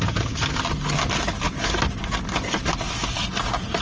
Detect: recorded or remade recorded